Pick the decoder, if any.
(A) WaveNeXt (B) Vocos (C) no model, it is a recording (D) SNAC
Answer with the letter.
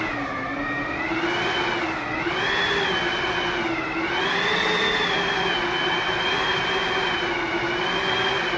C